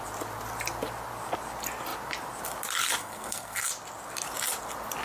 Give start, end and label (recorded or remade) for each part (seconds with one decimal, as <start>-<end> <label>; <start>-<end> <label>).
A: 0.0-3.0 recorded; 3.0-3.7 remade; 3.7-5.0 recorded